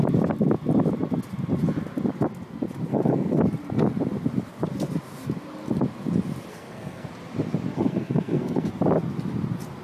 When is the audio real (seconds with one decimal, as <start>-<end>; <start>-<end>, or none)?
0.0-2.9; 3.4-6.5; 7.1-7.7; 8.7-9.8